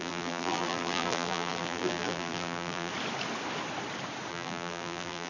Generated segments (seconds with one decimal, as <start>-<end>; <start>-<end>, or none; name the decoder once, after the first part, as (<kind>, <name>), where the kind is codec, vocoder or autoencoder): 0.0-2.9 (vocoder, BigVGAN v2); 4.3-5.3